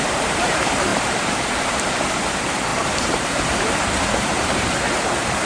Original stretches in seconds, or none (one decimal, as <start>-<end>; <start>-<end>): none